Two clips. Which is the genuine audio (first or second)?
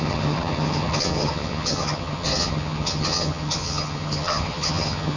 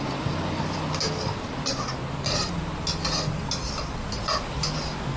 second